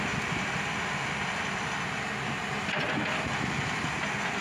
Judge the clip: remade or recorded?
recorded